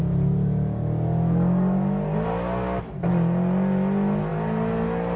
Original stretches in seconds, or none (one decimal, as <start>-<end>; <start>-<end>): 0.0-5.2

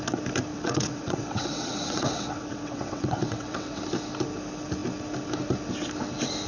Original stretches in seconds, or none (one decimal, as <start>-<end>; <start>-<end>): 0.0-0.5; 3.8-6.5

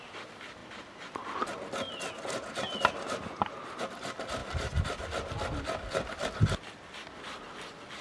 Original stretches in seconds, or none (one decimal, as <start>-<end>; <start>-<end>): 0.0-8.0

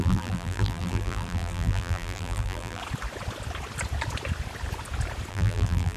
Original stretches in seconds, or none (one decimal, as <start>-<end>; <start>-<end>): 2.8-5.3

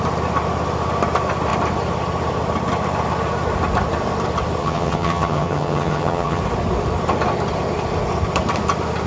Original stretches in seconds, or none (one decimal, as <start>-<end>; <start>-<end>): 0.0-4.6; 6.4-9.1

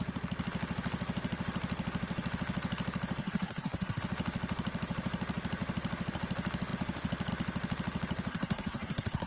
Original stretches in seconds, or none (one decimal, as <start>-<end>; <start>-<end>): 0.0-3.2; 4.0-8.3